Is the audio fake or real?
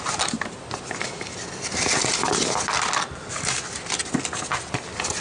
real